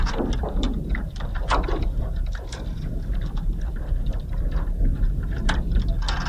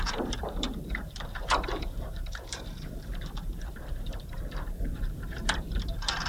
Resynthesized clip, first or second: second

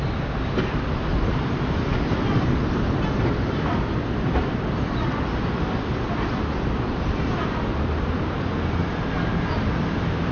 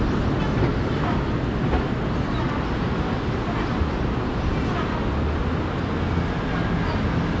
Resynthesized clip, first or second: first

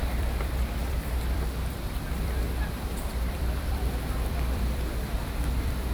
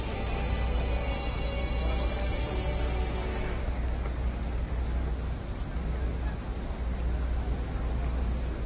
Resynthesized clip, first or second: first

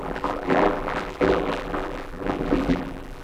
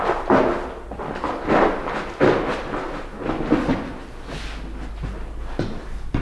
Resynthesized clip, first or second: first